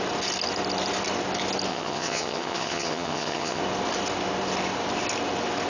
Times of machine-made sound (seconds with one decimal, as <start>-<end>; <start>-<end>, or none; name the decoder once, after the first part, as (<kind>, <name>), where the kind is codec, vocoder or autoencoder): 1.7-3.6 (vocoder, HiFi-GAN)